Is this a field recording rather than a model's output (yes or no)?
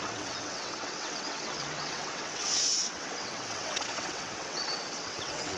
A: no